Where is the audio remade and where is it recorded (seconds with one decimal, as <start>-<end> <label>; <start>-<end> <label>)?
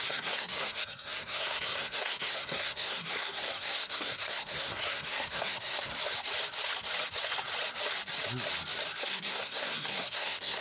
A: 0.0-5.9 remade; 5.9-9.0 recorded; 9.0-10.6 remade